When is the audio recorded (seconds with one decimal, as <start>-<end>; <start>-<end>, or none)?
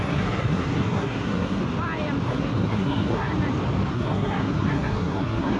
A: 1.6-2.3; 3.3-3.9